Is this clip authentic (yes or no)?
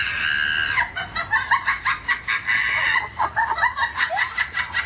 yes